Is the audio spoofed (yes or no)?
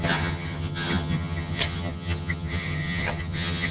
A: yes